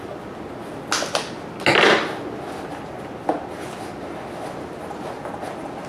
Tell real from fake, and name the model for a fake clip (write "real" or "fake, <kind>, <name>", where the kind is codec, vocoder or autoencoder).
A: real